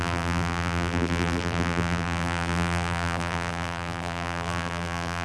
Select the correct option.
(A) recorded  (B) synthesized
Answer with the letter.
B